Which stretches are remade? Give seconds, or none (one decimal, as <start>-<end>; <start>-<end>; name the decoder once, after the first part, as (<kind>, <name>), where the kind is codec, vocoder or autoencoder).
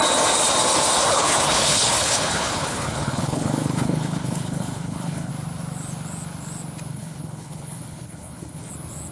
1.1-5.3 (codec, HILCodec); 6.9-8.7